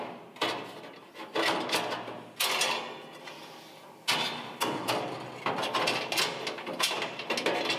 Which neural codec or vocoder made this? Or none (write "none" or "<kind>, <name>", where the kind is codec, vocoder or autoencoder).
none